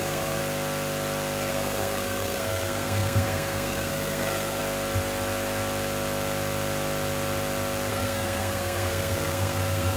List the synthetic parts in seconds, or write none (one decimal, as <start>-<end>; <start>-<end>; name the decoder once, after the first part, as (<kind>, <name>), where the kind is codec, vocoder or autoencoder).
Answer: 0.0-0.4 (codec, SNAC); 1.5-4.6; 7.9-10.0